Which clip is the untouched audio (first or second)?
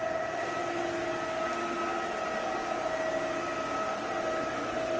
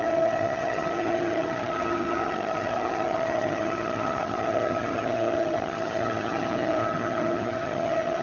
first